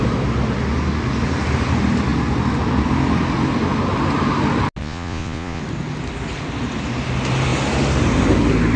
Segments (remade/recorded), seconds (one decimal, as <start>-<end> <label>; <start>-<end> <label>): 0.0-4.8 recorded; 4.8-5.6 remade; 5.6-8.8 recorded